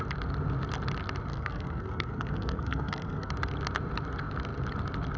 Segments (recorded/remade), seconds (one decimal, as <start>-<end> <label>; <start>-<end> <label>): 0.0-1.3 recorded; 1.3-3.3 remade; 3.3-5.2 recorded